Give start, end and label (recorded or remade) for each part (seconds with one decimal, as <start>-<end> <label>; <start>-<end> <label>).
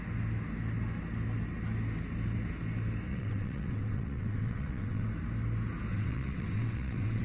0.0-3.1 recorded; 3.1-5.1 remade; 5.1-5.9 recorded; 5.9-7.2 remade